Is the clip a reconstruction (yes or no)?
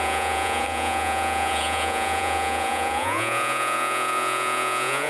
yes